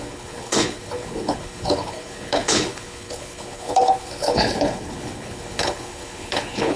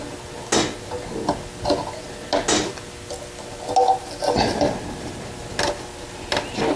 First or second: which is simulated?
first